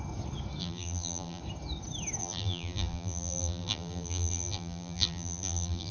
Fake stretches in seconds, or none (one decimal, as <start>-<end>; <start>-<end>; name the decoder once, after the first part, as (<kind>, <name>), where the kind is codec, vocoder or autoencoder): 0.6-1.4 (vocoder, BigVGAN v2); 2.2-5.9